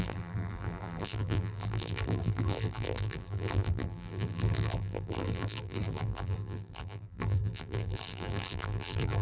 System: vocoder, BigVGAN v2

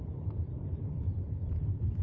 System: vocoder, BigVGAN v2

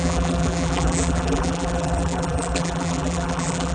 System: vocoder, BigVGAN v2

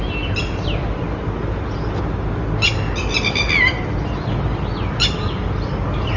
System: none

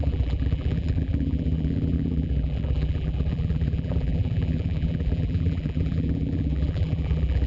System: vocoder, BigVGAN v2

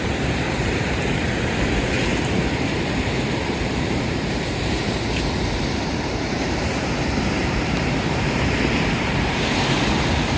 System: vocoder, BigVGAN v2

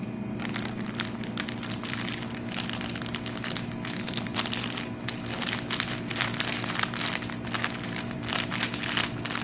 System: none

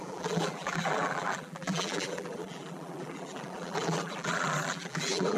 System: vocoder, BigVGAN v2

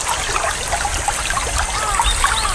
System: none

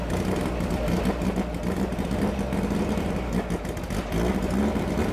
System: none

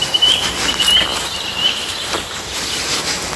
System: vocoder, BigVGAN v2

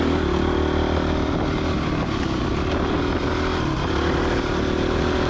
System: none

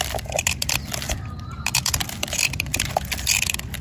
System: none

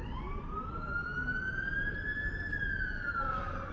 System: none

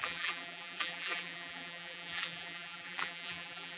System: vocoder, BigVGAN v2